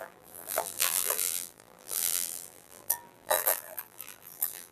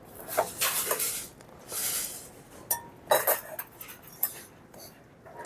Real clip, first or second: second